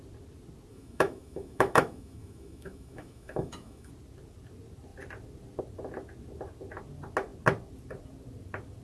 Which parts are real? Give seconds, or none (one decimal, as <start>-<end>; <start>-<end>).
0.0-0.7; 3.9-8.8